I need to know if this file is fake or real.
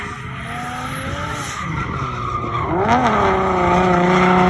real